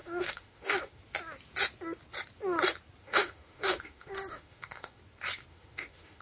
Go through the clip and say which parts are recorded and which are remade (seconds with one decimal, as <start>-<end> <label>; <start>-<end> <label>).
0.0-1.0 remade; 1.0-3.0 recorded; 3.0-5.0 remade; 5.0-5.5 recorded; 5.5-6.2 remade